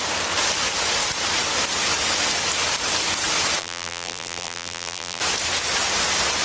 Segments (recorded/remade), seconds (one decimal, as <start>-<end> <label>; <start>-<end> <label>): 0.0-3.6 recorded; 3.6-5.2 remade; 5.2-6.4 recorded